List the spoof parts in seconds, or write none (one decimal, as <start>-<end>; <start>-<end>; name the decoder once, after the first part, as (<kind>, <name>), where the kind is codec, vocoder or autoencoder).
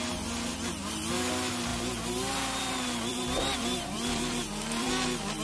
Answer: 1.7-4.9 (vocoder, BigVGAN v2)